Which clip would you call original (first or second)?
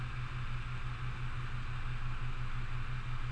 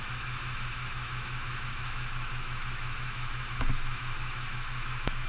first